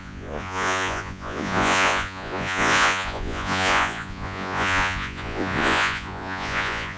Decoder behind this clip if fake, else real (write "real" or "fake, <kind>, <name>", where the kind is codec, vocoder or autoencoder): fake, vocoder, Vocos